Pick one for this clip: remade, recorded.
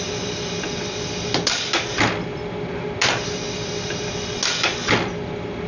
recorded